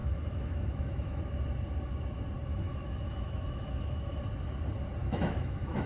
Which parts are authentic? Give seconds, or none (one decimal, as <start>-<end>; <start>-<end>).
1.2-2.5; 4.2-5.0